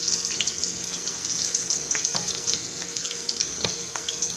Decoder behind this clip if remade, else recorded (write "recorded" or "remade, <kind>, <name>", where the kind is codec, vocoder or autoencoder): remade, codec, SNAC